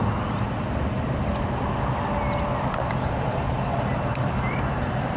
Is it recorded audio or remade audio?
recorded